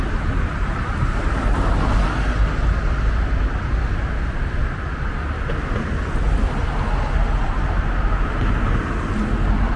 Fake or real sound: real